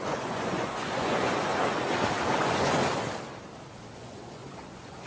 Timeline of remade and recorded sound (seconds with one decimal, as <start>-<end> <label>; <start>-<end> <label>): 0.0-1.5 remade; 1.5-2.4 recorded; 2.4-2.8 remade; 2.8-4.0 recorded; 4.0-5.1 remade